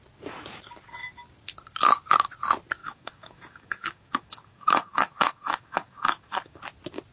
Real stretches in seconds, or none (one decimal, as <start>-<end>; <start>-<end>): 0.0-2.8; 6.6-7.1